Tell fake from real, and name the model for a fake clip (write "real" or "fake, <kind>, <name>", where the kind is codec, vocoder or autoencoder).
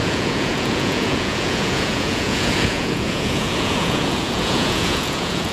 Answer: fake, vocoder, Vocos